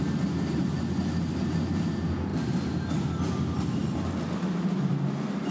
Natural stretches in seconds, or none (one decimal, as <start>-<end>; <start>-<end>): 0.0-2.3; 3.1-5.5